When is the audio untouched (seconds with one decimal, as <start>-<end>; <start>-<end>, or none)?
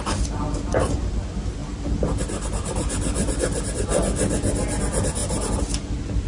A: 0.0-6.3